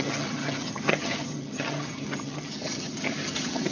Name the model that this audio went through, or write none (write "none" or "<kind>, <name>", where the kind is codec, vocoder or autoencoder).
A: vocoder, HiFi-GAN